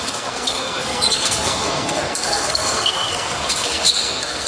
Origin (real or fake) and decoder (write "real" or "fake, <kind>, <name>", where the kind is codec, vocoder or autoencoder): fake, codec, SNAC